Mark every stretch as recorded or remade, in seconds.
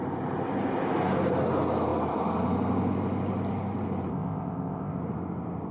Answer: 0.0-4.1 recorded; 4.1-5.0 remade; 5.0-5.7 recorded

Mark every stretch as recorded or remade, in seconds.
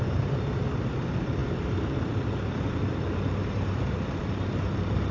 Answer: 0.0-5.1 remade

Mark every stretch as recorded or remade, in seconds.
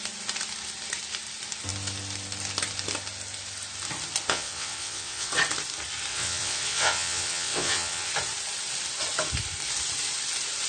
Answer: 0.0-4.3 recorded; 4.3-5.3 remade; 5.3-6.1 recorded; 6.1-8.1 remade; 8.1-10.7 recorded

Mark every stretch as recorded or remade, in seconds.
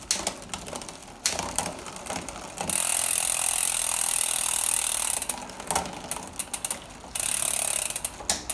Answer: 0.0-1.0 recorded; 1.0-1.9 remade; 1.9-8.5 recorded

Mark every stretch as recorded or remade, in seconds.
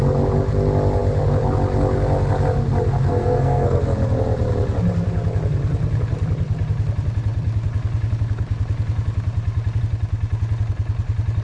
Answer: 0.0-3.1 recorded; 3.1-3.8 remade; 3.8-11.4 recorded